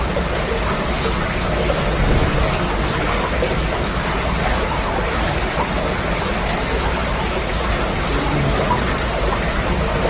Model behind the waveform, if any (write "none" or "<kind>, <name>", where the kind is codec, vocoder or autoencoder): none